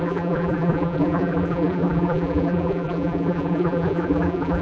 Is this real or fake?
fake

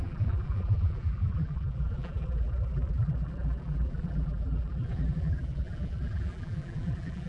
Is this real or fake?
fake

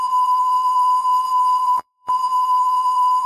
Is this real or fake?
fake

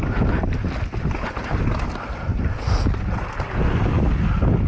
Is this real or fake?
real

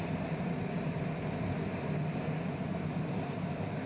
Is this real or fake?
fake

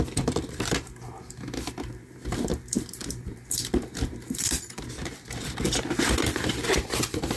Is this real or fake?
fake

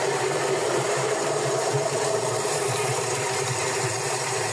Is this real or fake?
fake